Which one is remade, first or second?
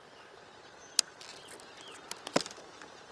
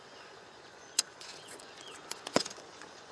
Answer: second